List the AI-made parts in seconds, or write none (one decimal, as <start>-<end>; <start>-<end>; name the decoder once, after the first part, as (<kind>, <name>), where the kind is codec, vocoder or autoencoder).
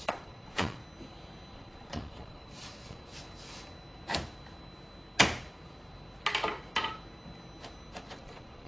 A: 0.0-0.8 (vocoder, Vocos); 1.5-3.1; 7.9-8.7